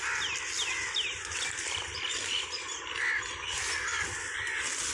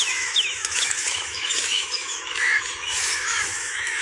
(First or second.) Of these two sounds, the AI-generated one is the second